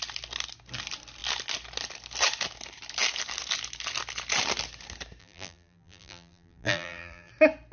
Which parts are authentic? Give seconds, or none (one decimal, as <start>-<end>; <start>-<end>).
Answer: 0.0-5.2; 7.3-7.7